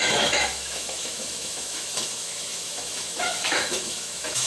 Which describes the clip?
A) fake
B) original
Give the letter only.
A